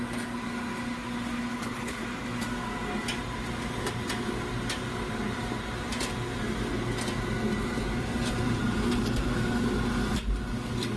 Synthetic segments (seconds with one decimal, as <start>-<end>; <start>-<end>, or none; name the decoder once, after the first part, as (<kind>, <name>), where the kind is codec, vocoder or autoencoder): 1.5-2.0 (codec, HILCodec)